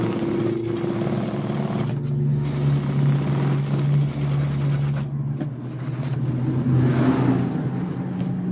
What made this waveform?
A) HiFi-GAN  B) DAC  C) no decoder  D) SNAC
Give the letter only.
C